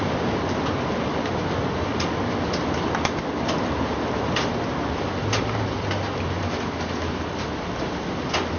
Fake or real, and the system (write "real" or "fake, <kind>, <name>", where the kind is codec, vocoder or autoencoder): real